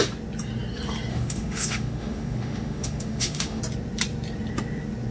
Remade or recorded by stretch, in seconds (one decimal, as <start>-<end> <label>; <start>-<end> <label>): 0.0-1.1 recorded; 1.1-3.6 remade; 3.6-5.1 recorded